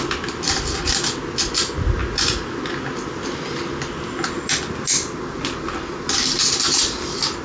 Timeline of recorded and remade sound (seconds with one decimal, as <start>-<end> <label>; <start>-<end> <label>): 0.0-7.4 recorded